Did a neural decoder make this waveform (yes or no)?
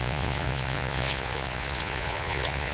yes